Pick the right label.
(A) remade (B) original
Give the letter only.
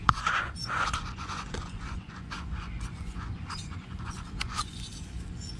A